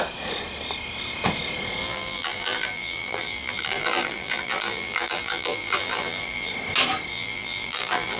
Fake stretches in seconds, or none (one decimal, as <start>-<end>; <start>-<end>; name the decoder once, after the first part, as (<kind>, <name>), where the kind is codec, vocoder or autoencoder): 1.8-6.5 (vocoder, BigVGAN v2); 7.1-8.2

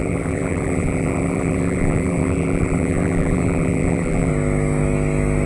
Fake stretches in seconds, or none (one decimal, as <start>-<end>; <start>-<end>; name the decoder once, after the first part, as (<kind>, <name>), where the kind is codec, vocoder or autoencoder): 0.0-4.3 (vocoder, BigVGAN v2)

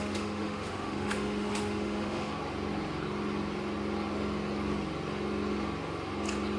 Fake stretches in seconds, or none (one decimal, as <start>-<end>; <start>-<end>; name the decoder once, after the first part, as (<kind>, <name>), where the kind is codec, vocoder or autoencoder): 0.0-2.3 (autoencoder, DAC-VAE)